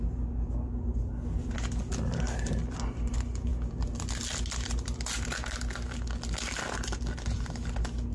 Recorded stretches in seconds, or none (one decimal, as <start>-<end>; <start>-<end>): 0.0-8.1